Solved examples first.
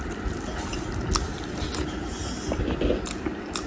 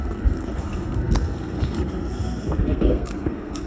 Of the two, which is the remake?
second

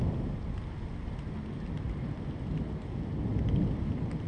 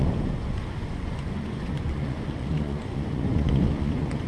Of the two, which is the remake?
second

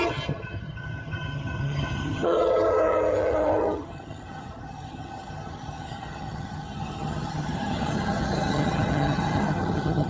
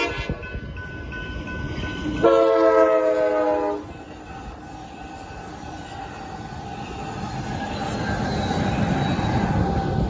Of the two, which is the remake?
first